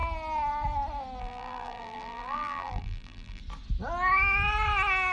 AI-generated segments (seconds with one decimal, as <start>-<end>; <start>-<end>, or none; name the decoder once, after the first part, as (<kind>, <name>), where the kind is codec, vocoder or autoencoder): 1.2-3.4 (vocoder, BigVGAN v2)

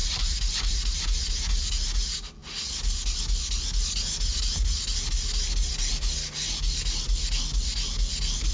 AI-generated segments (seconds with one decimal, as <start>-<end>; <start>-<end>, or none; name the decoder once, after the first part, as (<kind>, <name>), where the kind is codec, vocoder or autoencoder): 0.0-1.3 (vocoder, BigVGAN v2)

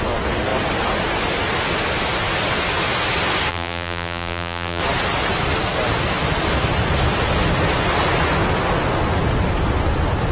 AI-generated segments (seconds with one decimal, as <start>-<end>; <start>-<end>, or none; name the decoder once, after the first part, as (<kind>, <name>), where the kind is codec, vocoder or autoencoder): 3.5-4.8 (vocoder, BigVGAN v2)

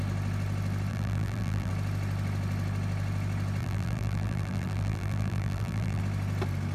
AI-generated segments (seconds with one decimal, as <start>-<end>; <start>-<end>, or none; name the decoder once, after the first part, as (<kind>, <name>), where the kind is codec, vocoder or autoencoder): 0.9-1.7 (vocoder, BigVGAN v2); 3.6-6.0

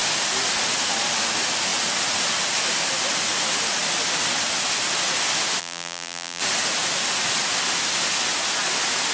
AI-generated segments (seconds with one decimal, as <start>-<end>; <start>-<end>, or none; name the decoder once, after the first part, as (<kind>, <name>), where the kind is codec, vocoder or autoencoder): 5.6-6.4 (vocoder, BigVGAN v2)

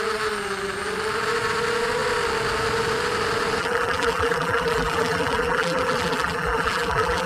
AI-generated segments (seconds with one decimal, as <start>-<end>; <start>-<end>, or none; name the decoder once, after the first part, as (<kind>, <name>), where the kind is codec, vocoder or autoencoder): 3.6-7.3 (vocoder, BigVGAN v2)

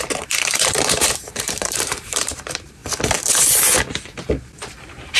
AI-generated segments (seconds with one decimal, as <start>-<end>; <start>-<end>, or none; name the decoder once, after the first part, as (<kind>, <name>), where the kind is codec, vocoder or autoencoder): 0.0-2.8 (vocoder, BigVGAN v2); 4.6-5.2

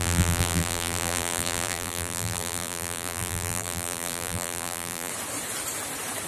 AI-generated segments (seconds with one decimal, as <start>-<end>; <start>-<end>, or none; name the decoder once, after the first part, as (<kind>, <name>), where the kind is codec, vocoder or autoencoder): 0.0-5.1 (vocoder, BigVGAN v2)